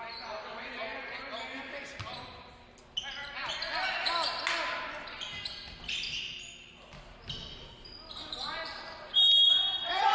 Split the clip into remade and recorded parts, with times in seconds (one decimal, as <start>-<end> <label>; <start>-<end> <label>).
0.0-10.1 recorded

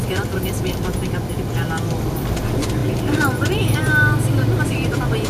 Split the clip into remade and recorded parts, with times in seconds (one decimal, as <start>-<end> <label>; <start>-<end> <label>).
0.0-2.8 recorded; 2.8-3.9 remade; 3.9-5.3 recorded

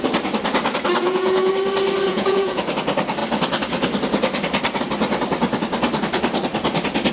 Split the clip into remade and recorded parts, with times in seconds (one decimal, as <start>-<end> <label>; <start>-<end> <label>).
0.0-1.0 recorded; 1.0-1.5 remade; 1.5-2.1 recorded; 2.1-2.6 remade; 2.6-7.1 recorded

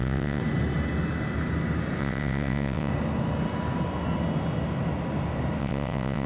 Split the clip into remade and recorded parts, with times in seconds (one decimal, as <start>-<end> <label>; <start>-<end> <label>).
0.0-0.4 remade; 0.4-2.0 recorded; 2.0-2.9 remade; 2.9-5.6 recorded; 5.6-6.3 remade

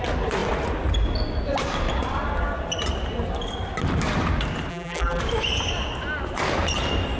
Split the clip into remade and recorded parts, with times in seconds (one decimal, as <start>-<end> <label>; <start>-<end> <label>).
0.0-4.7 recorded; 4.7-5.2 remade; 5.2-7.2 recorded

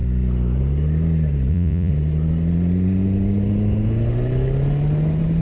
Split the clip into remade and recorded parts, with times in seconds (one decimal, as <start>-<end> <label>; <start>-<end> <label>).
0.0-1.5 recorded; 1.5-1.9 remade; 1.9-5.4 recorded